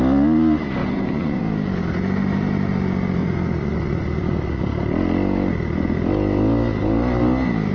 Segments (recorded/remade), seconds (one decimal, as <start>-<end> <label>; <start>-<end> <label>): 0.0-0.8 recorded; 0.8-1.4 remade; 1.4-3.2 recorded; 3.2-4.6 remade; 4.6-7.7 recorded